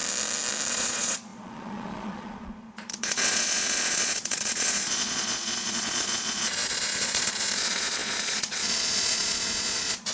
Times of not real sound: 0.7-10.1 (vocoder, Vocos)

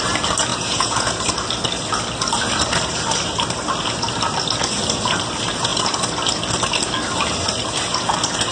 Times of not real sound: 0.5-1.1 (vocoder, Vocos)

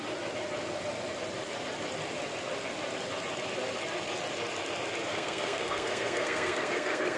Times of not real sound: 5.0-7.2 (codec, SNAC)